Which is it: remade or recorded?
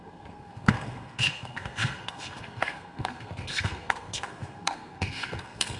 remade